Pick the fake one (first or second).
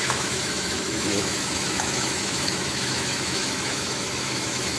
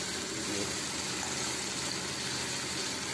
first